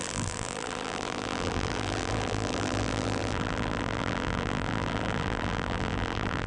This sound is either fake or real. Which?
fake